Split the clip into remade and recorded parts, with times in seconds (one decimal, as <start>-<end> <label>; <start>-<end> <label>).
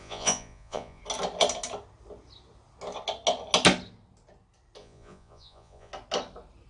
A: 0.0-1.0 remade; 1.0-4.8 recorded; 4.8-5.9 remade; 5.9-6.7 recorded